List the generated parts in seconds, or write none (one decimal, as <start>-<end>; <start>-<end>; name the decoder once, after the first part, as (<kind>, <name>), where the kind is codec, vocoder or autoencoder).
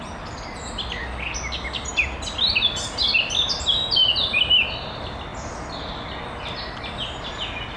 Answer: none